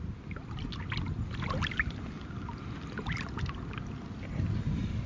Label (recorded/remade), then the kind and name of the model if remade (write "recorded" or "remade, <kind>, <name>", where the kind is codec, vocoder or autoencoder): recorded